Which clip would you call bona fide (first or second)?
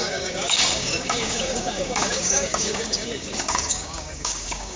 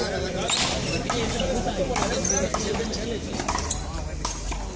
second